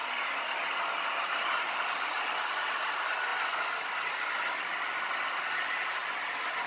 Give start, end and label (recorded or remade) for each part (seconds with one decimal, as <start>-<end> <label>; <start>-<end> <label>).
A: 0.0-2.9 remade; 2.9-3.3 recorded; 3.3-5.0 remade; 5.0-6.7 recorded